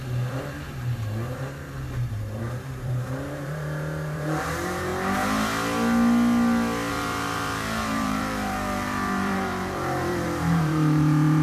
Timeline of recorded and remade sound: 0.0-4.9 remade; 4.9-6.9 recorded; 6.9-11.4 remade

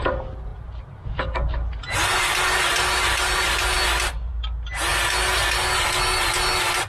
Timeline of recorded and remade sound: 0.0-0.5 recorded; 0.5-1.0 remade; 1.0-6.9 recorded

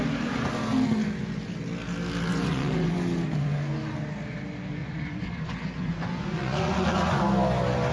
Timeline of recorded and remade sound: 0.0-2.3 recorded; 2.3-2.9 remade; 2.9-4.8 recorded; 4.8-7.2 remade; 7.2-7.9 recorded